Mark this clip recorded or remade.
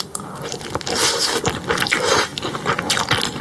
recorded